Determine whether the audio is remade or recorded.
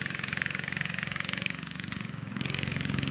remade